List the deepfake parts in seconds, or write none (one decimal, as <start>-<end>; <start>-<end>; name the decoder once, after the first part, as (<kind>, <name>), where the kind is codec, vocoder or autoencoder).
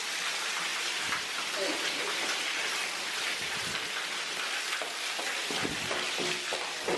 0.0-7.0 (vocoder, BigVGAN v2)